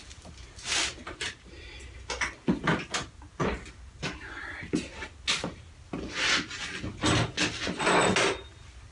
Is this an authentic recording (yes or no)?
yes